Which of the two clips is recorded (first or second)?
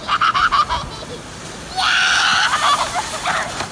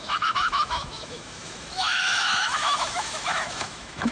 first